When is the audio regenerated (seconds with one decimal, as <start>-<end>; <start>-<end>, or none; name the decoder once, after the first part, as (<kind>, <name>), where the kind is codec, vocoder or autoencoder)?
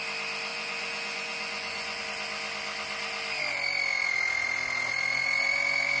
0.5-2.0 (vocoder, Vocos)